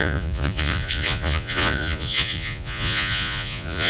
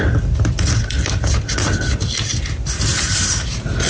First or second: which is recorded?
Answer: second